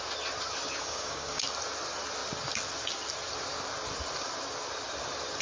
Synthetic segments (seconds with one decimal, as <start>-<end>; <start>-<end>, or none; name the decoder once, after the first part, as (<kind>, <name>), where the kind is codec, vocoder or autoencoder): 0.8-1.4 (codec, DAC)